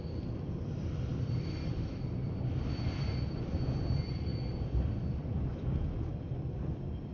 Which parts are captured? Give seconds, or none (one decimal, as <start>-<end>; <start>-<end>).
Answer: 4.3-5.1